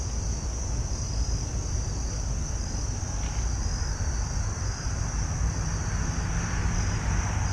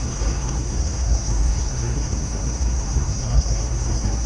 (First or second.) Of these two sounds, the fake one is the second